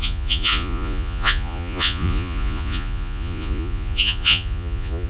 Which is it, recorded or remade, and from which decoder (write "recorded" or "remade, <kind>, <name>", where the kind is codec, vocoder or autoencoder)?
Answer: remade, vocoder, Vocos